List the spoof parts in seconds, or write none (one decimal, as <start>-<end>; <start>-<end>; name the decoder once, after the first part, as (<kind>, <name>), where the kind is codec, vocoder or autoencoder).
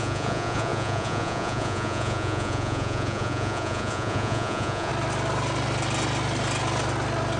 0.0-4.9 (vocoder, Vocos)